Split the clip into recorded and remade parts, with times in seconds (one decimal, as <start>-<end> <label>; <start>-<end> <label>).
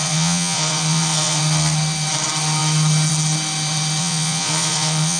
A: 0.0-1.4 remade; 1.4-4.0 recorded; 4.0-5.2 remade